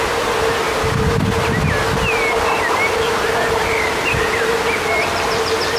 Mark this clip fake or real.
real